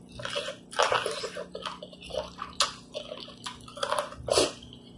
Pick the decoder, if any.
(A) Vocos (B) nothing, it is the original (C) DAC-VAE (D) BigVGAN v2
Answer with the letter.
B